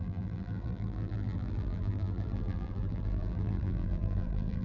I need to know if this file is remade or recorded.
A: remade